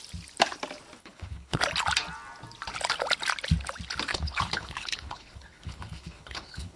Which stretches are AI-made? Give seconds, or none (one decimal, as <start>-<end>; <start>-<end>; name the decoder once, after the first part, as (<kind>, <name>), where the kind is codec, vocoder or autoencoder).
1.0-1.6 (codec, HILCodec); 4.1-6.8